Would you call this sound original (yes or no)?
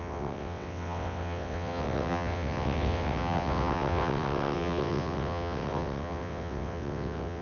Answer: no